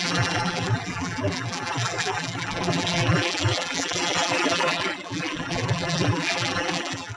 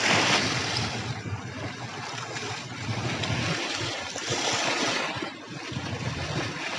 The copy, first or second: first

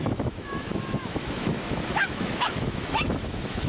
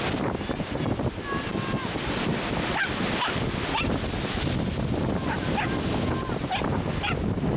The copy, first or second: first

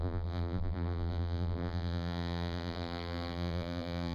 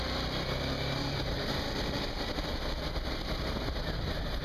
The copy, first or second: first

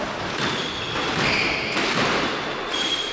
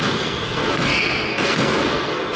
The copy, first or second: second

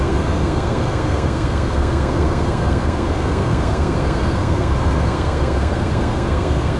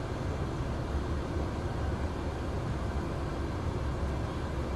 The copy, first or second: first